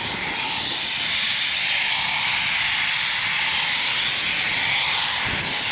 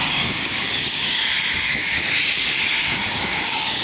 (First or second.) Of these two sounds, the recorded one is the first